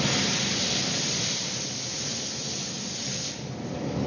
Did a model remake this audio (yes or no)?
no